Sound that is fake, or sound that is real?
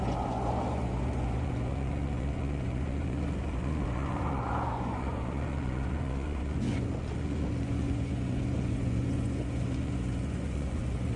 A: fake